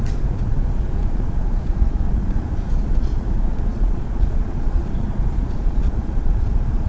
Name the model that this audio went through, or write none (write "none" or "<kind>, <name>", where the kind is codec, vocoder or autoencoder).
vocoder, Vocos